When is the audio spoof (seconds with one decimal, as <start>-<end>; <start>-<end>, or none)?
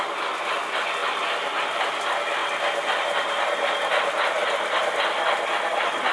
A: none